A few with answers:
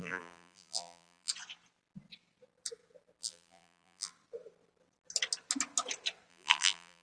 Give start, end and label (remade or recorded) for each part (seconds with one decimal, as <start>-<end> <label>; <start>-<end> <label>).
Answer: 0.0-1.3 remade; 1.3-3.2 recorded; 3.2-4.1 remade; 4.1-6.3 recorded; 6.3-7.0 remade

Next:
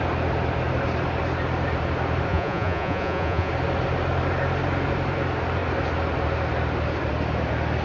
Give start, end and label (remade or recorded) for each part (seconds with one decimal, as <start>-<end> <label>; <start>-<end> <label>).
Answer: 0.0-2.3 recorded; 2.3-3.5 remade; 3.5-7.8 recorded

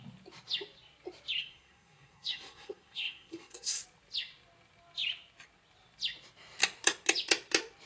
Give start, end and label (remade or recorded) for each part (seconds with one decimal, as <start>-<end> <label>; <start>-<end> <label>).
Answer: 0.0-1.4 recorded; 1.4-3.8 remade; 3.8-7.9 recorded

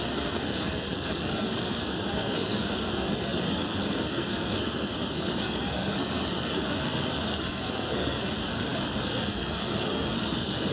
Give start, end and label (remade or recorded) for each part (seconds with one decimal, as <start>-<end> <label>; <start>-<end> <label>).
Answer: 0.0-10.7 remade

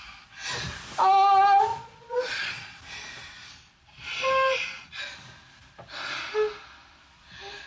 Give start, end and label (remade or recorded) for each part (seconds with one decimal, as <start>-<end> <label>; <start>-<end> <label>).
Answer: 0.0-1.7 recorded; 1.7-2.8 remade; 2.8-7.7 recorded